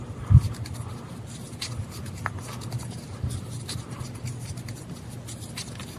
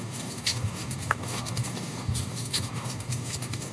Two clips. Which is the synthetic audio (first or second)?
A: second